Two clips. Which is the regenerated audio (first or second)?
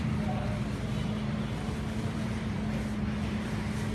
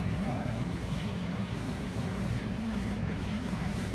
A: second